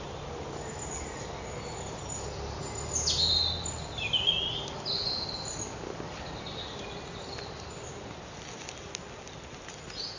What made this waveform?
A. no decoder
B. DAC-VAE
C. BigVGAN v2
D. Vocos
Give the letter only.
A